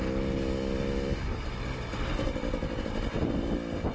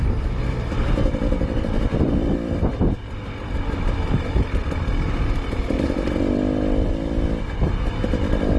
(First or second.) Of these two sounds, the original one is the first